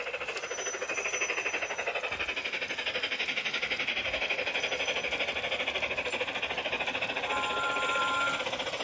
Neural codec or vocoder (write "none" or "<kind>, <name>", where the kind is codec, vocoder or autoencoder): none